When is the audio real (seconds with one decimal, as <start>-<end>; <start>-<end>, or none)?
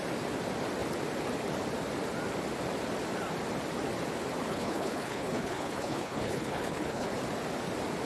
0.0-4.5; 7.1-8.1